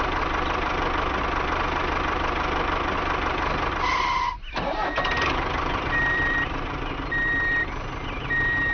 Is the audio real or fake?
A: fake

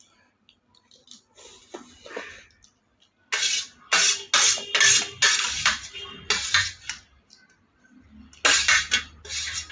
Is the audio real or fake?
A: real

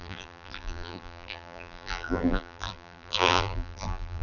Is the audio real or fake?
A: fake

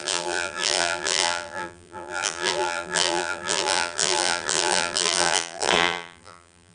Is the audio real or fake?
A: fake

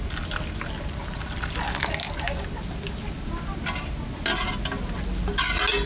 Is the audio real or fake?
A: real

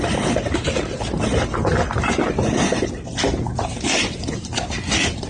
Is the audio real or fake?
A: fake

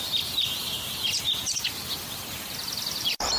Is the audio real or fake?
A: fake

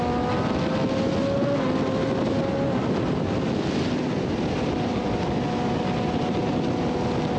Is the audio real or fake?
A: real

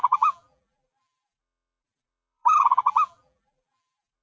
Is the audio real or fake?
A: fake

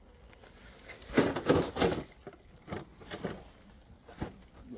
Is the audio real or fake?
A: real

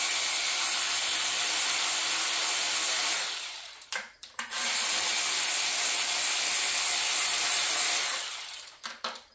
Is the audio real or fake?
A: fake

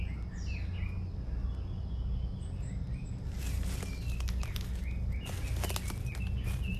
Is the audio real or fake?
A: real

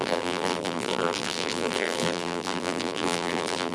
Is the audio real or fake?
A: fake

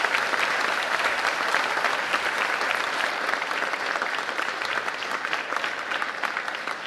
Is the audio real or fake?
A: fake